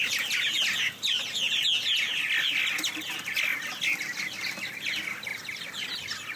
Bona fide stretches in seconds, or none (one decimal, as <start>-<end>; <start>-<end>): 0.0-6.4